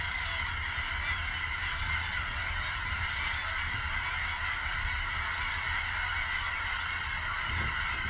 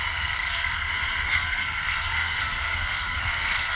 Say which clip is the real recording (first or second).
first